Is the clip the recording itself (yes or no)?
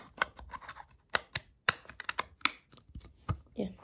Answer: yes